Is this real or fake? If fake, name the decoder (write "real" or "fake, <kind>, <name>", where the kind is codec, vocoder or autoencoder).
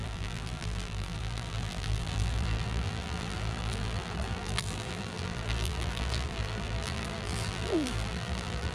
fake, vocoder, BigVGAN v2